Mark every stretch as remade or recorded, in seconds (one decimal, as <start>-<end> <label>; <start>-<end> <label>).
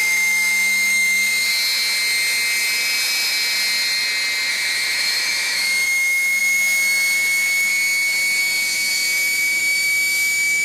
0.0-1.5 remade; 1.5-4.5 recorded; 4.5-7.7 remade; 7.7-8.4 recorded; 8.4-10.6 remade